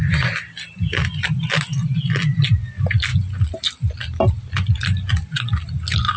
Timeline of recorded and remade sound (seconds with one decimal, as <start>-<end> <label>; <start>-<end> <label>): 0.0-6.2 recorded